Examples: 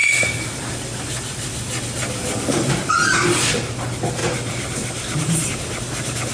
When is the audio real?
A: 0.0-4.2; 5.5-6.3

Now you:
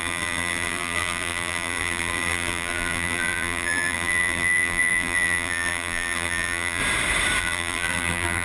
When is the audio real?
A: 6.8-7.4

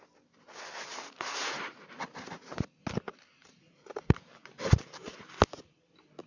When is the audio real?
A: 0.0-3.4; 5.4-6.3

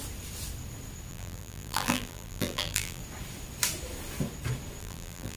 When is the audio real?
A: 0.0-1.1; 3.0-4.8